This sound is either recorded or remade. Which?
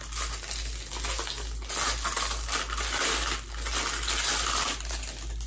recorded